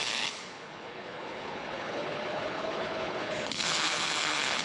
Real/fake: fake